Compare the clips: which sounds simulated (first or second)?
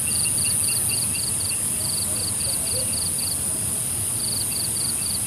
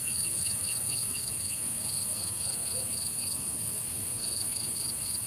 second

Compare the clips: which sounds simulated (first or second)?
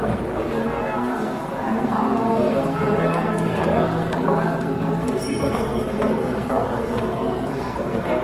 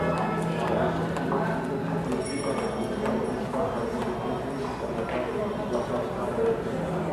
first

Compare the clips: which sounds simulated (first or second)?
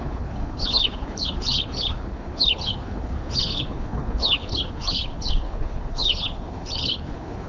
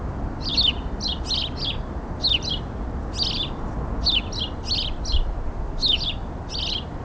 first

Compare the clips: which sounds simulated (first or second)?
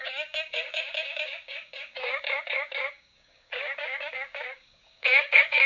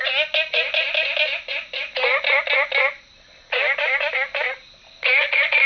first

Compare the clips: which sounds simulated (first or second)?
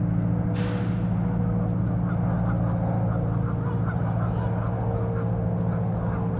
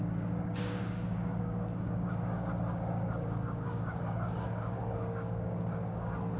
second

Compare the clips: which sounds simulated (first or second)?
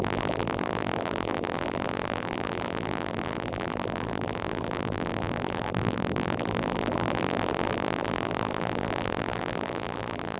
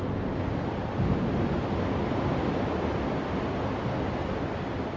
first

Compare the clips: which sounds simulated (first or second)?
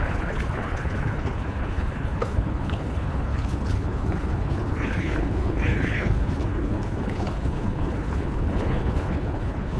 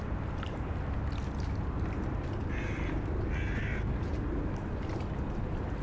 first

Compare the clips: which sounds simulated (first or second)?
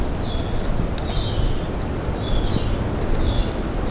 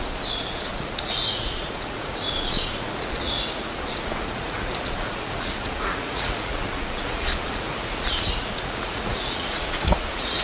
second